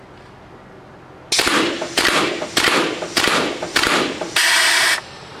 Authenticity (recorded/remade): recorded